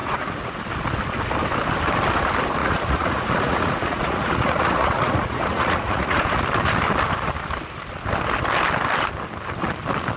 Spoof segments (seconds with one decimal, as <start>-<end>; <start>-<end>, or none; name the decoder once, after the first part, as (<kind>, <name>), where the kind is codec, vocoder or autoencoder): 0.0-0.6 (vocoder, Vocos); 2.6-6.4